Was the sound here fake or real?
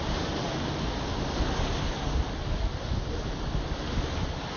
real